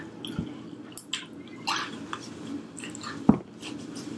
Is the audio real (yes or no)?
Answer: yes